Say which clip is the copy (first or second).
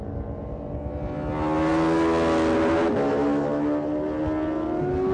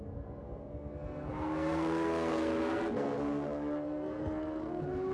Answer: second